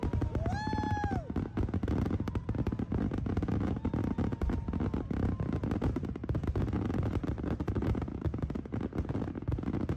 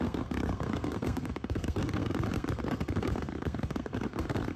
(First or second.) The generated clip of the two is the second